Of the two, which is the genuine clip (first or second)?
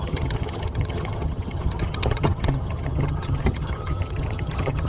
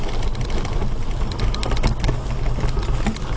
second